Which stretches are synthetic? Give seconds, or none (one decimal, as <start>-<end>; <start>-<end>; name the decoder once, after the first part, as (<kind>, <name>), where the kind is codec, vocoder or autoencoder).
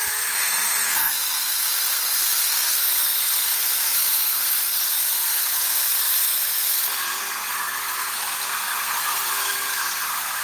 0.0-10.4 (codec, SNAC)